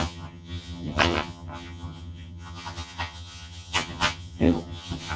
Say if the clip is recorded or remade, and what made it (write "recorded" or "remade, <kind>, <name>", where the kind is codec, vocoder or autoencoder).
remade, vocoder, HiFi-GAN